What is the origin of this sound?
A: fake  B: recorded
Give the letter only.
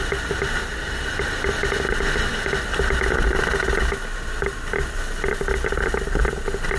B